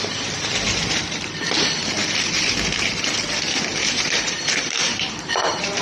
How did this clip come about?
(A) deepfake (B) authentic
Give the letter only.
A